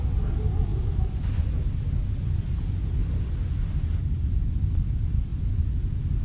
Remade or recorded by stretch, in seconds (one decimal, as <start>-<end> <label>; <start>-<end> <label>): 0.0-3.0 recorded; 3.0-4.6 remade; 4.6-6.2 recorded